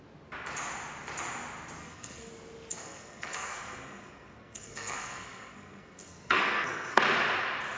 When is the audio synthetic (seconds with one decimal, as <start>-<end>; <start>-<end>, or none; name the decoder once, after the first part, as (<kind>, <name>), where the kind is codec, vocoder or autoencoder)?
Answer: 1.8-2.3 (codec, SNAC); 2.7-7.0